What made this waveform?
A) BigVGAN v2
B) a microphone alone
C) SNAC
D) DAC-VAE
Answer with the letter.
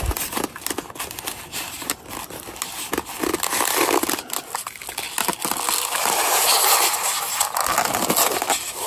B